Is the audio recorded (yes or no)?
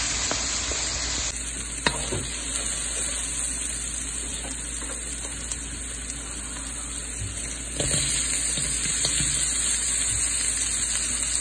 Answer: yes